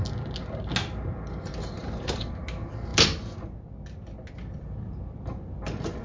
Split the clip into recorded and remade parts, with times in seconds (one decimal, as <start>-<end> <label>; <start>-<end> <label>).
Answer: 0.0-6.0 recorded